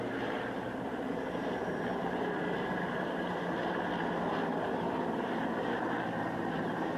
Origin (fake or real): fake